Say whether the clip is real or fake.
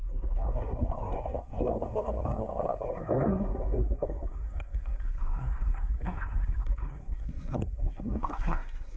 fake